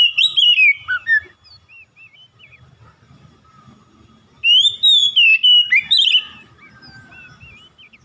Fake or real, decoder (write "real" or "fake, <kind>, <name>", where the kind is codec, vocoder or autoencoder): real